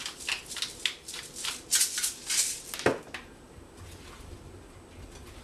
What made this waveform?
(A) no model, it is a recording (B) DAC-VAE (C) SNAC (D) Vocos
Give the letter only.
A